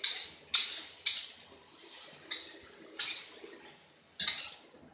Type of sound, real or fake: real